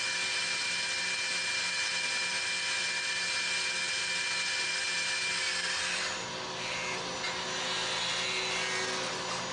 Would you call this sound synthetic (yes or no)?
no